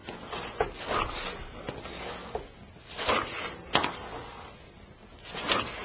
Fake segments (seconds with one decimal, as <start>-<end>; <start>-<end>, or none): none

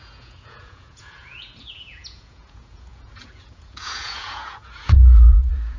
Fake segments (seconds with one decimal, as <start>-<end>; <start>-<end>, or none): 0.0-5.8